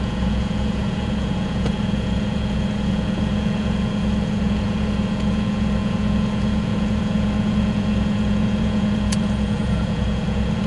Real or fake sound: fake